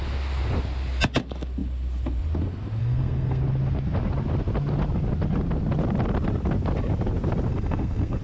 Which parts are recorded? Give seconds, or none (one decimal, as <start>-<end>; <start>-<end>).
0.0-2.8; 3.4-7.5